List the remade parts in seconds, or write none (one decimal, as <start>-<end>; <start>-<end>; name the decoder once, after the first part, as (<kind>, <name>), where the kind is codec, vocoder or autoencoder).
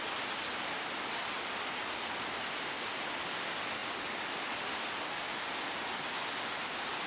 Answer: none